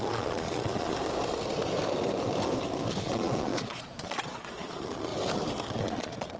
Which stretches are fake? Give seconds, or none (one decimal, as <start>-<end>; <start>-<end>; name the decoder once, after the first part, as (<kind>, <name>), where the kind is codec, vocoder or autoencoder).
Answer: 0.0-0.9 (vocoder, Vocos); 3.0-5.1; 5.7-6.4